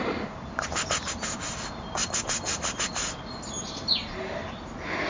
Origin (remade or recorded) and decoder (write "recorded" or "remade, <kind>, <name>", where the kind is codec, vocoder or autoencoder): recorded